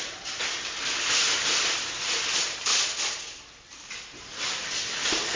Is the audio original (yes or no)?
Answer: yes